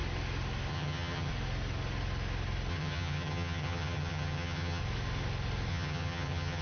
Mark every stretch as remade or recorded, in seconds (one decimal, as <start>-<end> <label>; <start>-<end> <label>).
0.0-0.7 recorded; 0.7-1.3 remade; 1.3-2.7 recorded; 2.7-4.8 remade; 4.8-5.7 recorded; 5.7-6.6 remade